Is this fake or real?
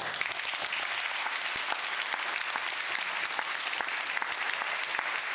real